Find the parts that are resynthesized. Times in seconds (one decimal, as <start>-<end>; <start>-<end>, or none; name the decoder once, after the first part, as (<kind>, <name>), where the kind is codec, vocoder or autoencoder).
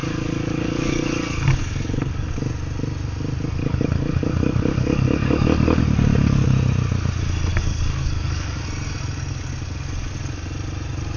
0.0-2.3 (codec, DAC); 3.6-5.8; 7.5-8.6